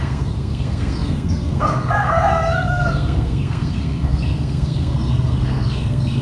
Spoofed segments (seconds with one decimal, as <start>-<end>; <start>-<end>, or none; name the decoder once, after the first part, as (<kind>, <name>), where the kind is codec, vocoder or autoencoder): 0.0-6.2 (codec, SNAC)